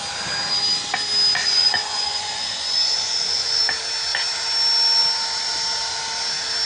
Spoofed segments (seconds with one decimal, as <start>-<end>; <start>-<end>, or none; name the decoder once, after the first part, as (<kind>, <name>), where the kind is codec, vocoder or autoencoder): 1.4-3.6 (vocoder, Vocos)